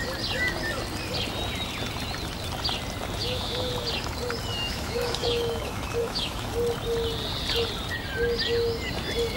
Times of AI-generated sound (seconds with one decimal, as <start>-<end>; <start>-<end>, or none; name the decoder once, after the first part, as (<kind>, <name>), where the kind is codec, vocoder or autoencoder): 3.2-3.7 (autoencoder, DAC-VAE); 4.5-6.5